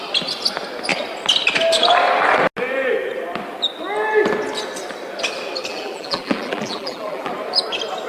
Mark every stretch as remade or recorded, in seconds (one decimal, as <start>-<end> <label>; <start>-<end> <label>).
0.0-5.7 recorded; 5.7-7.3 remade; 7.3-8.1 recorded